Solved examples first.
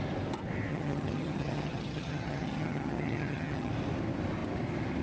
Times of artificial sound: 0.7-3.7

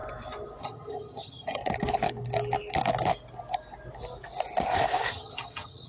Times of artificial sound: 0.6-1.6; 5.1-5.9

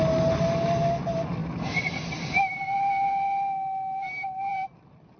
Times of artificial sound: none